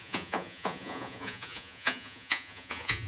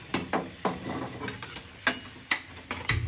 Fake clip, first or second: first